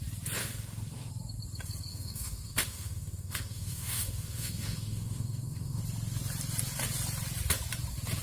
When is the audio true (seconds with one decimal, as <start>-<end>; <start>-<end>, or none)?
0.0-0.4; 1.1-1.9; 5.8-8.2